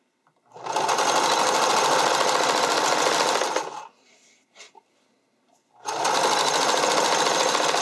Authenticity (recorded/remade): recorded